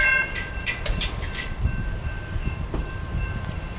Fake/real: fake